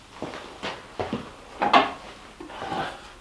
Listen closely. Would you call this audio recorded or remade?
recorded